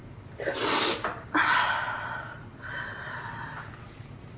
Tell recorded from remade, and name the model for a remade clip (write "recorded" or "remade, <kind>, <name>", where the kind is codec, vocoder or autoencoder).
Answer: remade, vocoder, BigVGAN v2